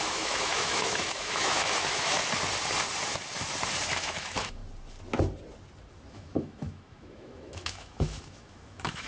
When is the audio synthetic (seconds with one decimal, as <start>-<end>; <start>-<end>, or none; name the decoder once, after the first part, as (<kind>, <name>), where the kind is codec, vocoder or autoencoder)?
0.0-2.2 (autoencoder, DAC-VAE); 3.9-4.6; 6.1-9.1